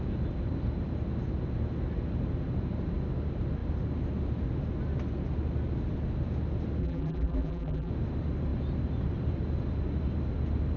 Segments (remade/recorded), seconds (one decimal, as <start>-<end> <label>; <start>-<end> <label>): 0.0-6.8 recorded; 6.8-7.9 remade; 7.9-10.8 recorded